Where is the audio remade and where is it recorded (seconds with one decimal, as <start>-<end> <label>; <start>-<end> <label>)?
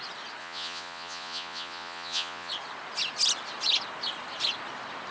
0.0-0.4 recorded; 0.4-2.5 remade; 2.5-5.1 recorded